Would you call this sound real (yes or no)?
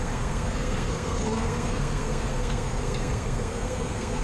no